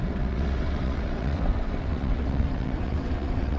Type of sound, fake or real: fake